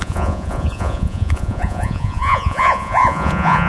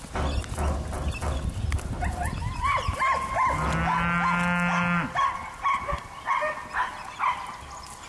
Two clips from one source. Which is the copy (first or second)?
first